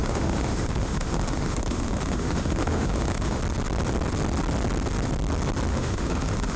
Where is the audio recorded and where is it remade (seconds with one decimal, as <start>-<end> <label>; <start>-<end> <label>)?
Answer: 0.0-3.4 remade; 3.4-5.7 recorded; 5.7-6.6 remade